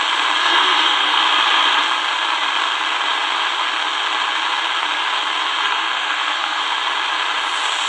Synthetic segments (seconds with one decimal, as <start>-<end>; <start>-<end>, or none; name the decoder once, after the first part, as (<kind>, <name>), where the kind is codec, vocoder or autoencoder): 0.4-1.2 (codec, SNAC); 5.6-6.6